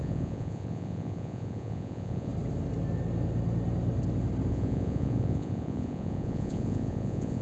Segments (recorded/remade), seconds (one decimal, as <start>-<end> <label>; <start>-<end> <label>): 0.0-2.3 remade; 2.3-4.5 recorded; 4.5-7.4 remade